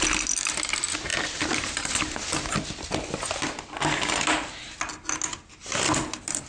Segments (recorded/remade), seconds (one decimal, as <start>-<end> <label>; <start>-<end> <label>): 0.0-6.5 recorded